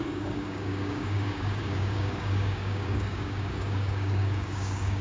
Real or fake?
fake